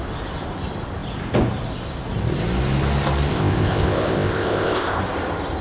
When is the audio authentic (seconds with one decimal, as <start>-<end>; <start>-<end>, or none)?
0.0-3.3; 5.0-5.6